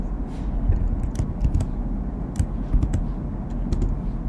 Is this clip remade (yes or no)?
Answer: no